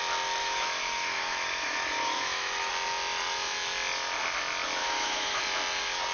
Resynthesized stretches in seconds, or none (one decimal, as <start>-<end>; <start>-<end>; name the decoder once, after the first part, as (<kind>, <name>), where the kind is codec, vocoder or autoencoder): 0.4-2.7 (autoencoder, DAC-VAE); 4.8-5.4